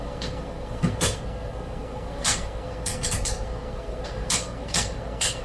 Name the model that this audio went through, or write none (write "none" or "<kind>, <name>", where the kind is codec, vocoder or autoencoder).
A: codec, SNAC